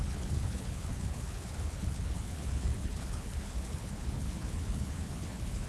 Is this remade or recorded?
remade